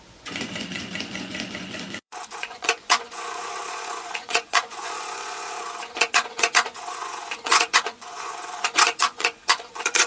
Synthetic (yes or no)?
yes